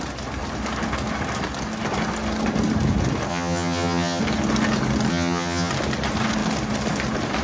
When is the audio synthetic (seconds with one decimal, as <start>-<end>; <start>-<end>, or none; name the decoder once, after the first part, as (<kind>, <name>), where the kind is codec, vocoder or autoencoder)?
3.3-4.2 (vocoder, HiFi-GAN); 5.1-5.7